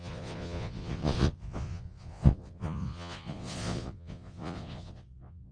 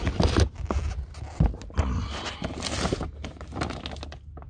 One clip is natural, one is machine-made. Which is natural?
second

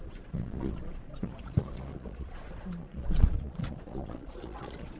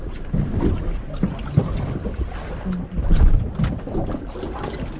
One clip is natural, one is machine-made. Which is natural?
second